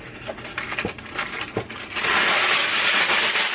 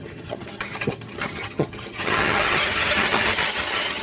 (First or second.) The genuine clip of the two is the first